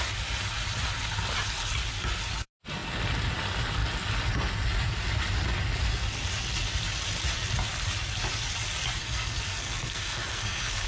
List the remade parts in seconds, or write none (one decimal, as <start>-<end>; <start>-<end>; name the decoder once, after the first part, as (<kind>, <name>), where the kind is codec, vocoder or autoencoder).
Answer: 9.0-10.9 (codec, SNAC)